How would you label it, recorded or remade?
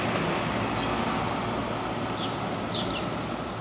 recorded